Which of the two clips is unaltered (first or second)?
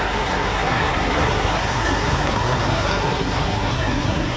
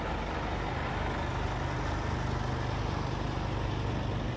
second